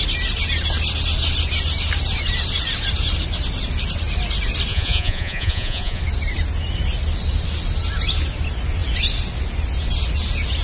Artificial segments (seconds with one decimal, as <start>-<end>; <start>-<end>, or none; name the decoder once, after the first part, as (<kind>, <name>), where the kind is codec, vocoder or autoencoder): 4.7-6.0 (vocoder, Vocos)